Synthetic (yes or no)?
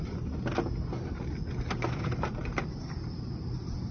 no